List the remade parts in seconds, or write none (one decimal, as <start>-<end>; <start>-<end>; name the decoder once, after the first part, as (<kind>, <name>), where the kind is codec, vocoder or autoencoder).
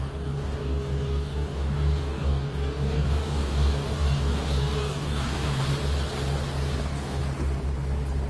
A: 0.0-5.6 (codec, DAC); 6.8-7.2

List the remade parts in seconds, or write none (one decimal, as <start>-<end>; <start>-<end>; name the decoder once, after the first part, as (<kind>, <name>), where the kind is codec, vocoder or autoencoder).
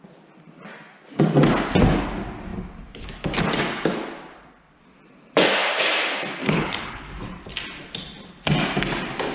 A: 6.4-7.1 (codec, HILCodec)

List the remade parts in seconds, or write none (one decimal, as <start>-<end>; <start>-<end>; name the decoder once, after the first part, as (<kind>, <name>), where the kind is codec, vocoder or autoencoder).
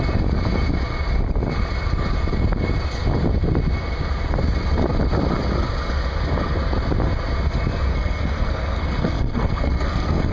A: 7.9-10.3 (codec, SNAC)